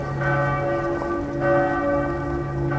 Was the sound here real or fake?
real